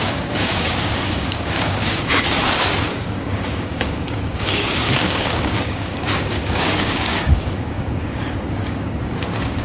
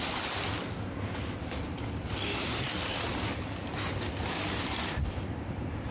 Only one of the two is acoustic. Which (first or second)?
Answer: second